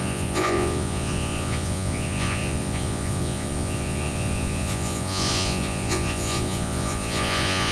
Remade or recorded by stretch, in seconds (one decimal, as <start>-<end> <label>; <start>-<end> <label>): 0.0-7.7 remade